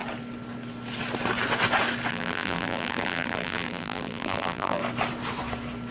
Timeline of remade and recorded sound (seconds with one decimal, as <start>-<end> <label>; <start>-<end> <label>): 0.0-2.1 recorded; 2.1-4.8 remade; 4.8-5.9 recorded